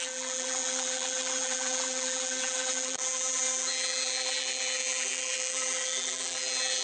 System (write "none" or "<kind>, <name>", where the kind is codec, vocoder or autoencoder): vocoder, BigVGAN v2